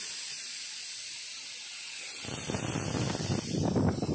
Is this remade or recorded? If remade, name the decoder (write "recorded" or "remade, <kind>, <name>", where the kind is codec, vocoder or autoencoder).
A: recorded